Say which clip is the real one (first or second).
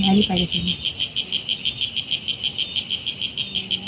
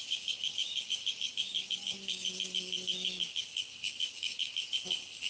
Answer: first